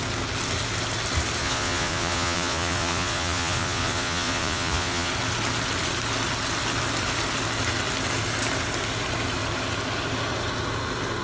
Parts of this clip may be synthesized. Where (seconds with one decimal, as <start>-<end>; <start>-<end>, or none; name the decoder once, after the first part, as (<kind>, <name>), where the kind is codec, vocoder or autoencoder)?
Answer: 1.4-5.1 (vocoder, Vocos)